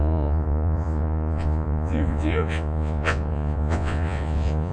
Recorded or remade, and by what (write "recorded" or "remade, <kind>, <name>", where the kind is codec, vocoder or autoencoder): remade, vocoder, Vocos